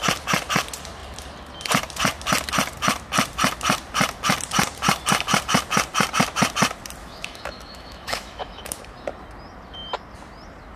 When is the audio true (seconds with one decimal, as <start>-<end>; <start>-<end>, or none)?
0.0-7.0; 8.8-10.8